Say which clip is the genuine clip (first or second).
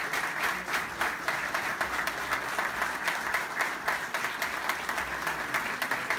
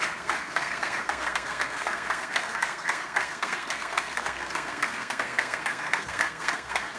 first